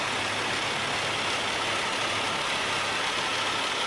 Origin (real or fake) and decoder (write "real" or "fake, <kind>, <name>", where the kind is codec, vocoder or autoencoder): real